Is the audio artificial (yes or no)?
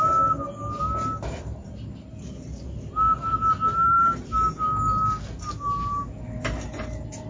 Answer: no